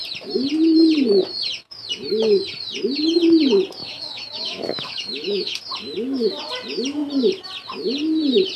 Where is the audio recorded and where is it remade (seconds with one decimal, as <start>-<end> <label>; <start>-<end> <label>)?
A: 0.0-3.8 recorded; 3.8-5.6 remade; 5.6-8.6 recorded